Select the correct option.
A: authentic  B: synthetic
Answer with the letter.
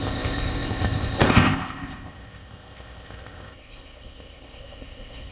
B